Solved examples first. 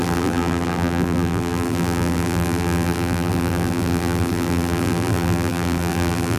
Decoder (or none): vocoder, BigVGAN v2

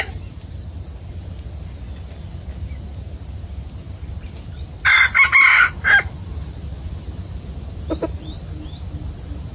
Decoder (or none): none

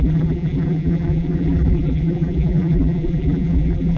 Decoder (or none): vocoder, BigVGAN v2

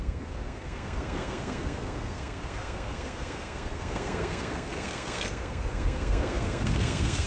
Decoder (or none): codec, SNAC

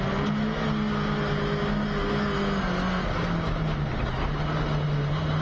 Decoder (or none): none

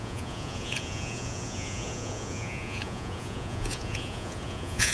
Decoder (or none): vocoder, Vocos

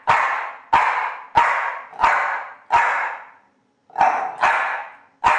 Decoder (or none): none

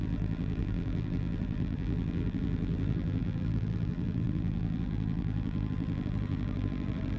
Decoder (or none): vocoder, BigVGAN v2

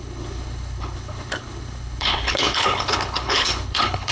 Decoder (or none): codec, HILCodec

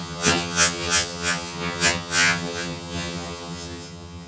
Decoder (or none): vocoder, HiFi-GAN